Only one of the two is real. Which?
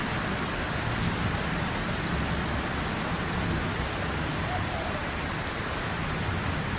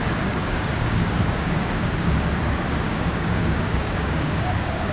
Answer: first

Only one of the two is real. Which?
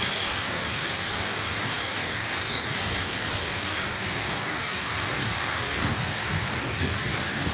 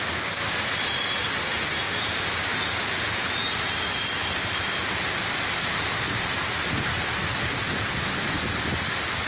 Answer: second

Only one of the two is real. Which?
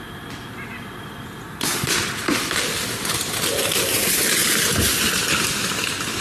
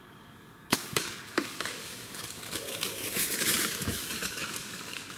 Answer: first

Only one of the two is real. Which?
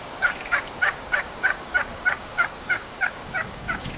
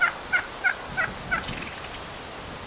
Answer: second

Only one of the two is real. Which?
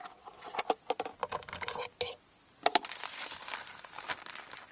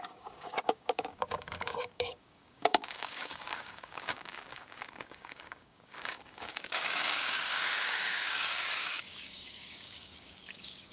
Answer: first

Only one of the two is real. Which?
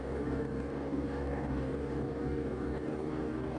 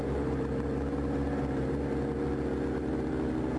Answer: second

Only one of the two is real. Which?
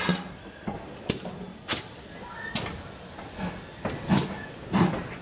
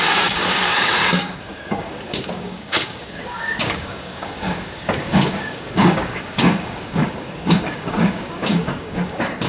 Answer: first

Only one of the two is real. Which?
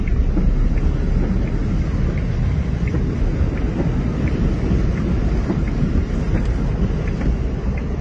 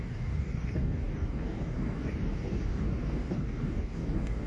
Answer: first